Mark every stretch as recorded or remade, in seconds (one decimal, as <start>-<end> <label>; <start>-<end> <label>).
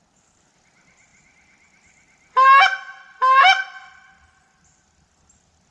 0.0-5.7 recorded